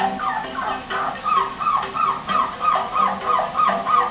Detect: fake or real real